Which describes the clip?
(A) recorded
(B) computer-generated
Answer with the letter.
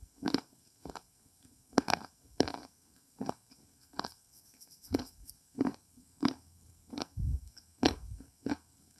B